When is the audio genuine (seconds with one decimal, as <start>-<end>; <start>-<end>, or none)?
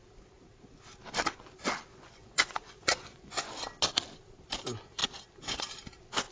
0.0-1.9; 3.5-6.3